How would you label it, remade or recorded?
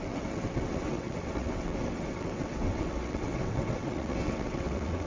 remade